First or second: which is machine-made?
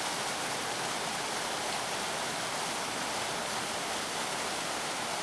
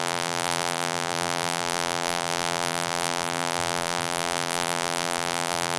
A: second